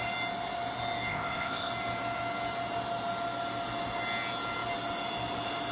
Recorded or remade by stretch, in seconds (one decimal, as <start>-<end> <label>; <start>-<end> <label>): 0.0-1.1 recorded; 1.1-1.7 remade; 1.7-5.7 recorded